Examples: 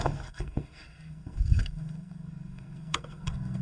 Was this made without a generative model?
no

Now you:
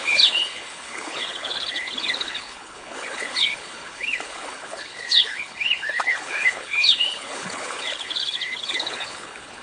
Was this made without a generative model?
no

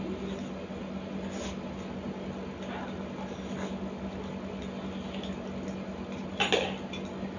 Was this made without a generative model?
yes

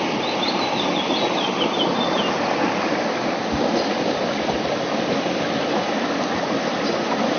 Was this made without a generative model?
yes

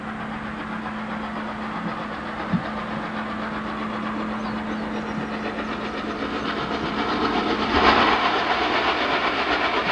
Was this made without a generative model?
yes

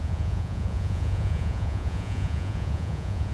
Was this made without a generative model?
no